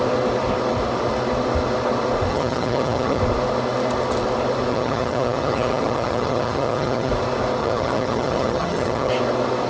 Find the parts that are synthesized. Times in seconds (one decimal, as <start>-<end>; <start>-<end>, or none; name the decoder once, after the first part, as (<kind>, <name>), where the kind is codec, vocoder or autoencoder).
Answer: 2.3-3.2 (vocoder, HiFi-GAN); 4.7-7.1; 7.6-9.1